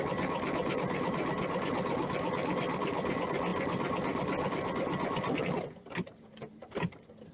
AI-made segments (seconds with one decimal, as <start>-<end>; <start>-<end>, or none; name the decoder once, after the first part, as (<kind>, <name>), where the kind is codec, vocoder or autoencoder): none